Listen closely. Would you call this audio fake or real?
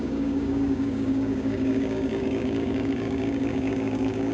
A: fake